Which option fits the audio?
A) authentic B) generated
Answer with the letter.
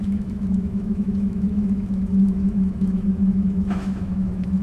B